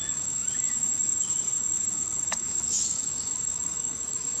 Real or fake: fake